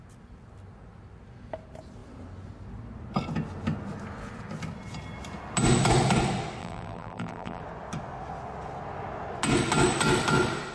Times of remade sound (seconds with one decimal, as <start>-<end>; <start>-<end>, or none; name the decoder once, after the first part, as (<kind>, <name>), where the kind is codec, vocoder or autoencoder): 6.6-7.6 (vocoder, BigVGAN v2)